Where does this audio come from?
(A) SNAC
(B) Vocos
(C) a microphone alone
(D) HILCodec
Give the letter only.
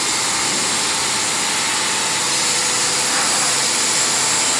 C